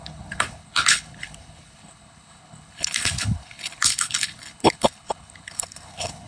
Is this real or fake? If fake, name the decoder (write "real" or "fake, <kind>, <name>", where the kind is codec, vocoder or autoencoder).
fake, codec, HILCodec